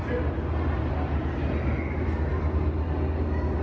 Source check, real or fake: real